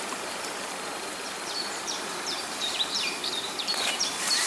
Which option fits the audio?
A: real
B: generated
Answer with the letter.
B